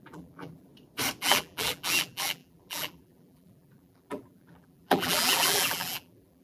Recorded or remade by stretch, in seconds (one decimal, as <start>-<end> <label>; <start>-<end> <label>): 0.0-0.7 remade; 0.7-1.2 recorded; 1.2-6.4 remade